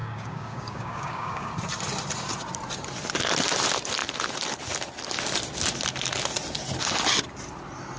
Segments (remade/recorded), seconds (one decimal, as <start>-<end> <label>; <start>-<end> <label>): 0.0-1.5 remade; 1.5-8.0 recorded